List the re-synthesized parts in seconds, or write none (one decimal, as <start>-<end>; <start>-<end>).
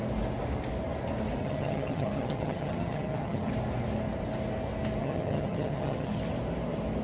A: 1.4-3.5; 5.0-6.2